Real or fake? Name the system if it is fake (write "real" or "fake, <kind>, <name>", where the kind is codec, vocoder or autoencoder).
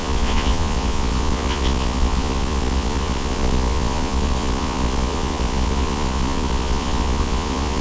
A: fake, vocoder, Vocos